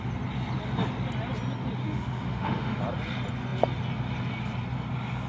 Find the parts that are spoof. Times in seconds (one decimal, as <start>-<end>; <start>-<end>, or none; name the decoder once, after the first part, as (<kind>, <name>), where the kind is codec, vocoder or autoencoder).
1.8-2.8 (autoencoder, DAC-VAE)